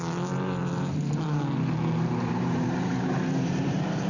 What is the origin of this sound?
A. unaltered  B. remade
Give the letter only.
B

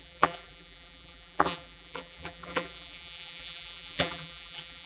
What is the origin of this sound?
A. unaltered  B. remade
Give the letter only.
B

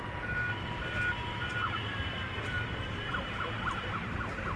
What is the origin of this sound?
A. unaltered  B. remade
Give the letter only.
A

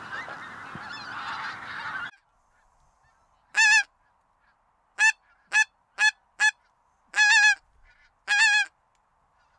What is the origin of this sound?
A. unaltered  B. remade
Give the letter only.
A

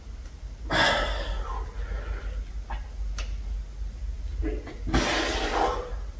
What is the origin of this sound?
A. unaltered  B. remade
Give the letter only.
A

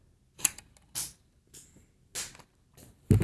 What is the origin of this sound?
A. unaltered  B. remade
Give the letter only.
A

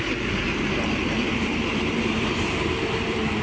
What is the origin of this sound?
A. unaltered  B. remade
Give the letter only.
B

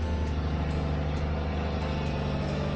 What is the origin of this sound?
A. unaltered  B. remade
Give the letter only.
A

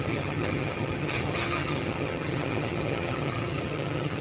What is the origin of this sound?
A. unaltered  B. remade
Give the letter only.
B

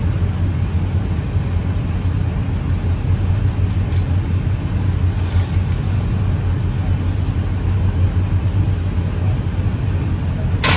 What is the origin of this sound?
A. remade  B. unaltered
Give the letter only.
B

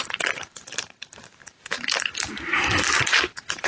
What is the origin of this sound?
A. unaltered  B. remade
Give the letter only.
B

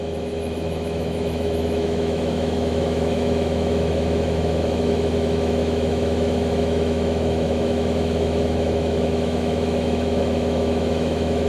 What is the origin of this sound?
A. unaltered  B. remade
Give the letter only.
B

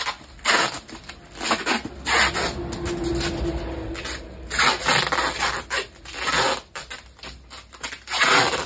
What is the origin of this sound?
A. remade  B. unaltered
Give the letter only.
B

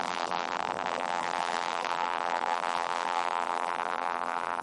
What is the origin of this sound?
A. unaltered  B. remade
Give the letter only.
B